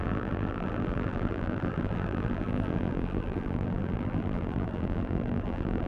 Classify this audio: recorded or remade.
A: remade